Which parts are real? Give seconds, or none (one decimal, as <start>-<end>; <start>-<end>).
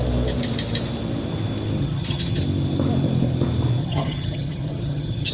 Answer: 0.0-1.8; 2.4-3.8